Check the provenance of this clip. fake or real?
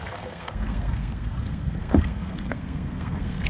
fake